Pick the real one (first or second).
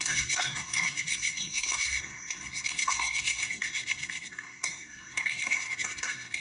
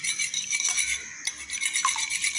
second